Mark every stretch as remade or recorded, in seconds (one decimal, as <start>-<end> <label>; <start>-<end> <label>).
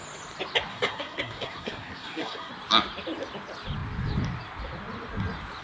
0.0-0.7 recorded; 0.7-2.5 remade; 2.5-5.6 recorded